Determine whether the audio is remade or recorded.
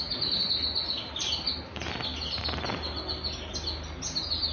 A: recorded